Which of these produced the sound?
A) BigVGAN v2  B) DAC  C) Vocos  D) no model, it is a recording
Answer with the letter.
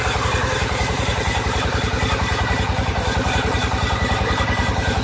A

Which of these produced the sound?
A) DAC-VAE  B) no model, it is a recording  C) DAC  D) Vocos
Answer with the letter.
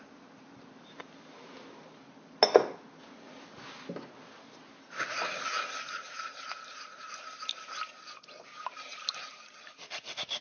B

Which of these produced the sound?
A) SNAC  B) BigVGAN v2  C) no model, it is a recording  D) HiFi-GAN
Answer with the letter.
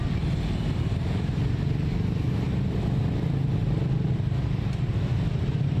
C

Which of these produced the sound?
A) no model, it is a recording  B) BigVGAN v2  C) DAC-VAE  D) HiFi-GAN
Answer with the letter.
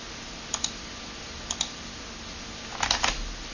A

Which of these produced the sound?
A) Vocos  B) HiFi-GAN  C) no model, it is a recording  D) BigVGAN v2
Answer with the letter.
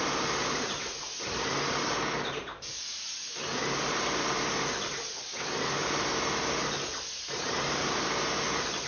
C